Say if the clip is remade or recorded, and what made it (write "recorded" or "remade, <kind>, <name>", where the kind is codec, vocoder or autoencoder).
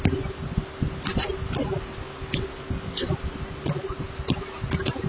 recorded